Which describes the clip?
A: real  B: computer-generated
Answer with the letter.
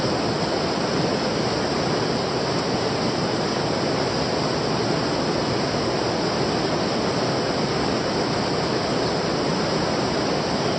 A